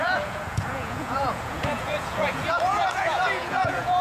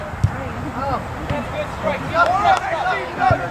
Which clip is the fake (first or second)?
first